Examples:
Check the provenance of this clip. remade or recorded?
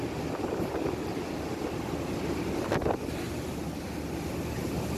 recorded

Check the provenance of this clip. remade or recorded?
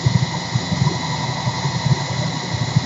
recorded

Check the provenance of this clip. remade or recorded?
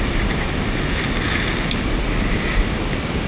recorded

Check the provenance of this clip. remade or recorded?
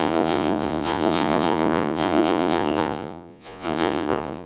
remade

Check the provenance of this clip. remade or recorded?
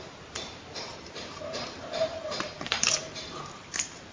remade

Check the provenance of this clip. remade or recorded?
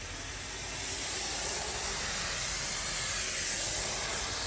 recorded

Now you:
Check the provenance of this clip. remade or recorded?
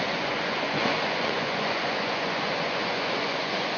remade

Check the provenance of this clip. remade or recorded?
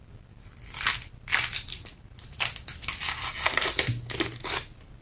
recorded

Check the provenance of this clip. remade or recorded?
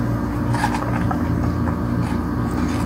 recorded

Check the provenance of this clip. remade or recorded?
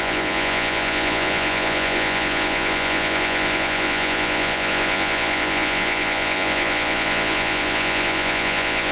remade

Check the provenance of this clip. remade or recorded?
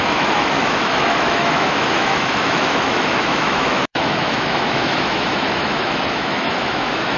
remade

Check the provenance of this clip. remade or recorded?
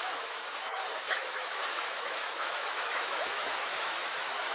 remade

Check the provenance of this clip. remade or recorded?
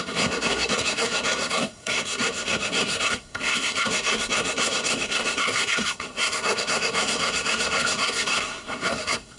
remade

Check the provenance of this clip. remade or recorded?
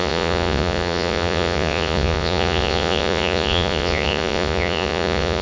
remade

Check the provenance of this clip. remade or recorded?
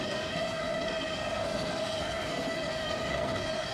remade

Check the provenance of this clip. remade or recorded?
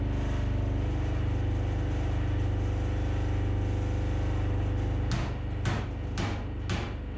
recorded